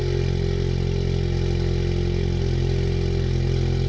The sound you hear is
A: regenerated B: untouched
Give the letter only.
B